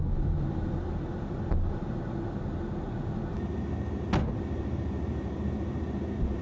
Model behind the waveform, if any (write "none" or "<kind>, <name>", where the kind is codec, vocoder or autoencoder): none